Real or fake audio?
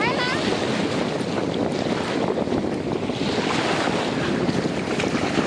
real